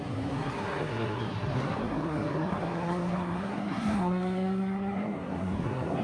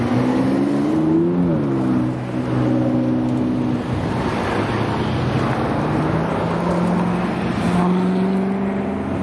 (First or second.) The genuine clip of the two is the second